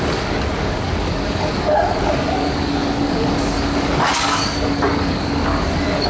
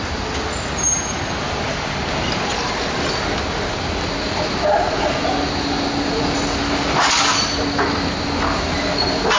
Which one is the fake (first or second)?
first